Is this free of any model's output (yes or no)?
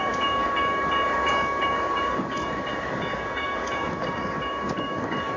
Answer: no